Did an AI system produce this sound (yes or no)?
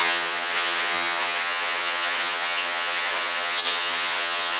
yes